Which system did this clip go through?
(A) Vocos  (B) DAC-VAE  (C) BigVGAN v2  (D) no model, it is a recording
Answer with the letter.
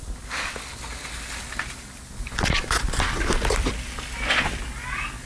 D